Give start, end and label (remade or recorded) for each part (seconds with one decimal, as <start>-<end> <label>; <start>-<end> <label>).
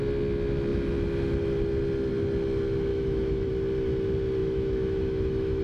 0.0-2.9 recorded; 2.9-3.5 remade; 3.5-4.4 recorded; 4.4-5.6 remade